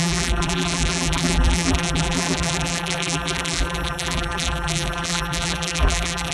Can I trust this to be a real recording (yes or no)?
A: no